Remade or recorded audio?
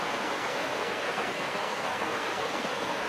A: remade